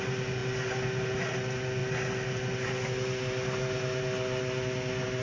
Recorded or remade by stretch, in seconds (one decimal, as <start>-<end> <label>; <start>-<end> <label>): 0.0-5.2 recorded